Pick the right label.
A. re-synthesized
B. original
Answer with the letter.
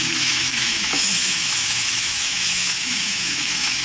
A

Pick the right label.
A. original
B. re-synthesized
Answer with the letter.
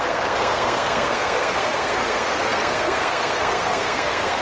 B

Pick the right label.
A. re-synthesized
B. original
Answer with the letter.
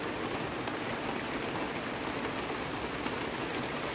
B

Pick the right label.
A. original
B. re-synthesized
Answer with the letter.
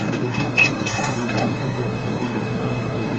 B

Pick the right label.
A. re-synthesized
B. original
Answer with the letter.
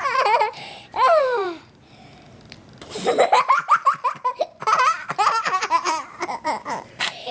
A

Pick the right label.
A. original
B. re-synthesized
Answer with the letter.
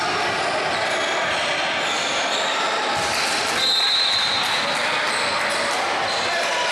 A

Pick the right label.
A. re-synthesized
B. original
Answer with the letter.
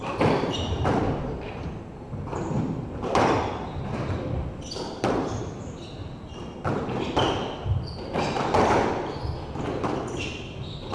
B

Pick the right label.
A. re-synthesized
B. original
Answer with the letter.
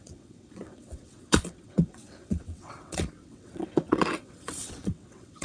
A